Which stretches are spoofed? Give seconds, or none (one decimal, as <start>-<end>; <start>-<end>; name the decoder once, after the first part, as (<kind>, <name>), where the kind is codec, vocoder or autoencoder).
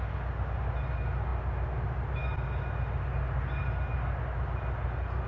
none